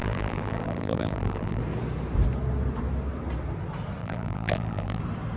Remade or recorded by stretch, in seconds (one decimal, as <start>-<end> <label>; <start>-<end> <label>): 0.0-1.6 remade; 1.6-4.0 recorded; 4.0-5.0 remade; 5.0-5.4 recorded